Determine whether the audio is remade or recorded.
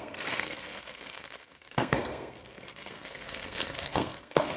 remade